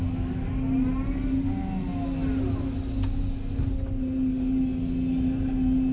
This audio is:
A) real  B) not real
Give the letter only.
A